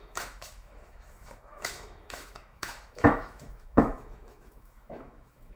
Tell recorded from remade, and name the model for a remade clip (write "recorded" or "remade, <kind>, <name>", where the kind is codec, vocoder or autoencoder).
remade, autoencoder, DAC-VAE